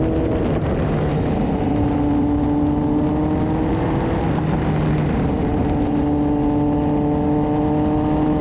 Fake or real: real